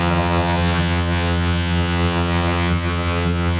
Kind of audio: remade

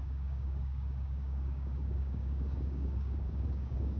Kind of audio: remade